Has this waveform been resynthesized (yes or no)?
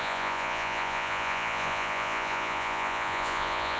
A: yes